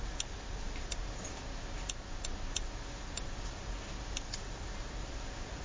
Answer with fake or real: real